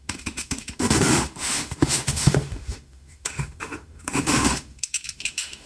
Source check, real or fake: fake